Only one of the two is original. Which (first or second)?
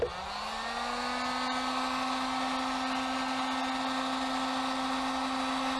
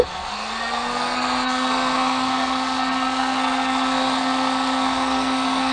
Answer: first